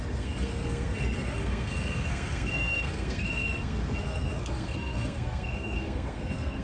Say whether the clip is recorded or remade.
remade